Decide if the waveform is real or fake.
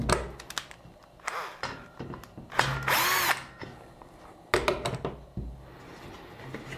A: real